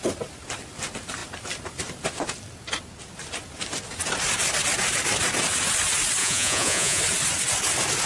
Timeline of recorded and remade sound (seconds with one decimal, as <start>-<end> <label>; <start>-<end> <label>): 0.0-6.2 recorded; 6.2-7.0 remade; 7.0-8.1 recorded